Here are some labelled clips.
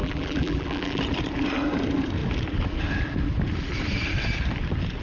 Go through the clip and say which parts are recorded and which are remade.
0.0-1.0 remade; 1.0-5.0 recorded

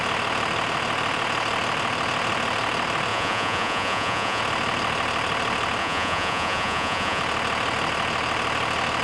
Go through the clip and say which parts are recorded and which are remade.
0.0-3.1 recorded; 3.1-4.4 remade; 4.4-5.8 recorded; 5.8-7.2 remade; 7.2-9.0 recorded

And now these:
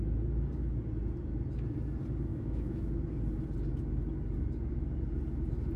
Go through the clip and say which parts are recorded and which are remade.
0.0-2.3 recorded; 2.3-2.9 remade; 2.9-5.8 recorded

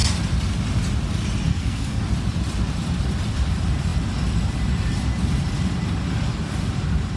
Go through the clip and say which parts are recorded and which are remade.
0.0-1.5 recorded; 1.5-2.0 remade; 2.0-7.2 recorded

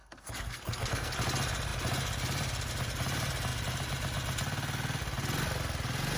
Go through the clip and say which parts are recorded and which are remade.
0.0-1.1 remade; 1.1-6.2 recorded

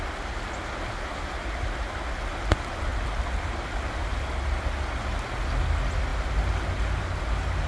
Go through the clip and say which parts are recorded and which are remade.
0.0-7.7 recorded

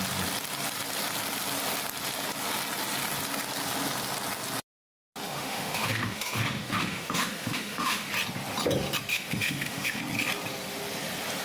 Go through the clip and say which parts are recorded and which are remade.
0.0-5.2 recorded; 5.2-8.1 remade; 8.1-9.1 recorded; 9.1-10.0 remade; 10.0-11.4 recorded

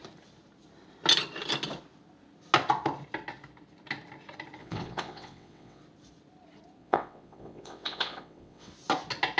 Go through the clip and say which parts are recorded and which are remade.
0.0-4.6 recorded; 4.6-5.8 remade; 5.8-6.8 recorded; 6.8-8.7 remade; 8.7-9.4 recorded